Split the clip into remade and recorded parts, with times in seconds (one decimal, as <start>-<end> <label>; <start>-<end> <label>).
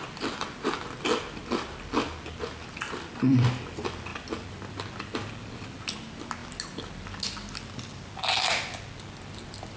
0.0-9.8 recorded